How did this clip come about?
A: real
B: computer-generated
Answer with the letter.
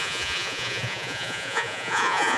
B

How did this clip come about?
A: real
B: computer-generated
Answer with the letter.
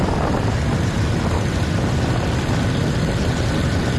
A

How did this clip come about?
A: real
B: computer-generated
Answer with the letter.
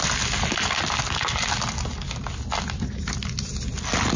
A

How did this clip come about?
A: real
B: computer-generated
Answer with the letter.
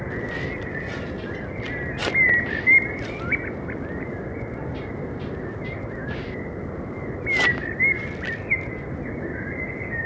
A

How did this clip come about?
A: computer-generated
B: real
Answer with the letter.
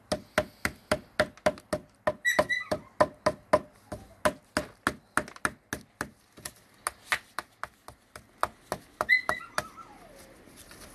B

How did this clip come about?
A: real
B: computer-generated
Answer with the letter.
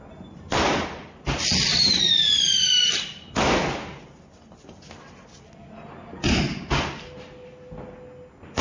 A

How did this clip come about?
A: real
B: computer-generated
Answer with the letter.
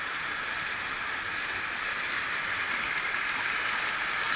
A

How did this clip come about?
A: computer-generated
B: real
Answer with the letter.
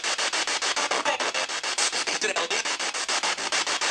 B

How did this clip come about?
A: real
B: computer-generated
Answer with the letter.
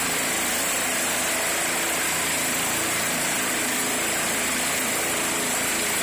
A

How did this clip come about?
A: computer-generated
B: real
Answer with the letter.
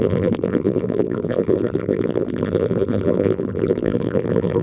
A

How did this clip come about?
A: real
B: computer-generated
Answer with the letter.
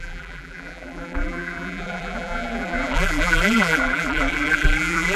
B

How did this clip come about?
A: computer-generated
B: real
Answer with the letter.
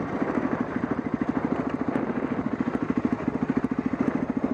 B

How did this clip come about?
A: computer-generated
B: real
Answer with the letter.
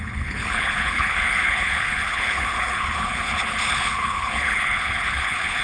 A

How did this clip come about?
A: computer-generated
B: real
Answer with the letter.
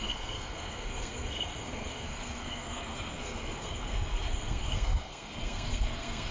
A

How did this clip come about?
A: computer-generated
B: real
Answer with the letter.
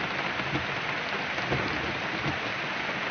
B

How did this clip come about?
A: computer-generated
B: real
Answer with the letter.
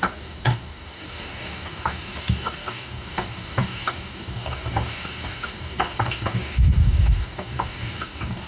A